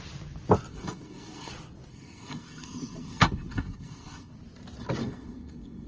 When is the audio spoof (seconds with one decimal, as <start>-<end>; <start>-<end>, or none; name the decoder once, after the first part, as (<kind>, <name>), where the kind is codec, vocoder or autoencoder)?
0.7-1.5 (codec, SNAC); 1.9-4.3; 5.0-5.9